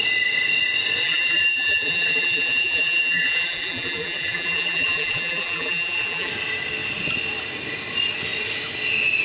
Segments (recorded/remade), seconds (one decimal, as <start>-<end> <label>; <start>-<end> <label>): 0.0-1.0 recorded; 1.0-6.3 remade; 6.3-9.2 recorded

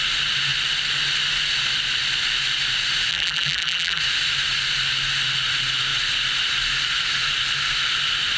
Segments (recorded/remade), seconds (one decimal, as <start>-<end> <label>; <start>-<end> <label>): 0.0-3.1 recorded; 3.1-4.0 remade; 4.0-8.4 recorded

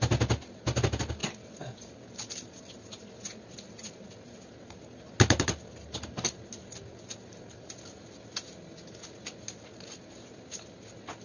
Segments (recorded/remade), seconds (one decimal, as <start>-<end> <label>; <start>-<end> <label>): 0.0-1.2 recorded; 1.2-2.5 remade; 2.5-11.2 recorded